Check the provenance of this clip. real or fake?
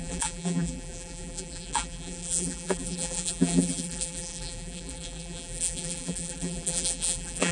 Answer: fake